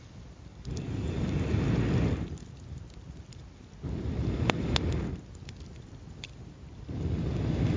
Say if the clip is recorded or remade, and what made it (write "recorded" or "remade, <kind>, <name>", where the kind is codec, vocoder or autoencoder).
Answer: recorded